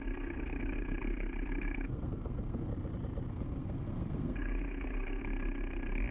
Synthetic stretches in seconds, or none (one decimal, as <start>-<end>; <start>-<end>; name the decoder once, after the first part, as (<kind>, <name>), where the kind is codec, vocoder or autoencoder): 0.0-2.7 (codec, SNAC); 3.3-5.2